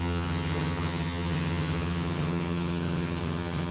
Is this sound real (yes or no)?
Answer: no